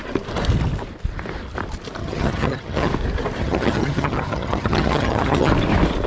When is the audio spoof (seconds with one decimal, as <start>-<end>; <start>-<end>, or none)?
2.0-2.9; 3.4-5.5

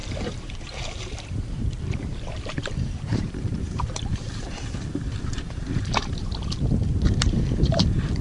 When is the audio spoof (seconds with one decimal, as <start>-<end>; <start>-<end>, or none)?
0.0-8.2

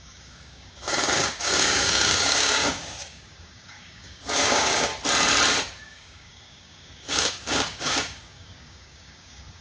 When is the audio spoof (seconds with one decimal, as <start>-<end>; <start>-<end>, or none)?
0.0-4.9; 5.8-9.6